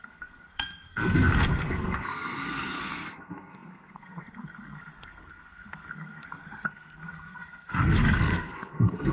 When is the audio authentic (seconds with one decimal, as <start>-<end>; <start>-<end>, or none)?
none